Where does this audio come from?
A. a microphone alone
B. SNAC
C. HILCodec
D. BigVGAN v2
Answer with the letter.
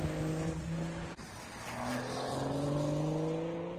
A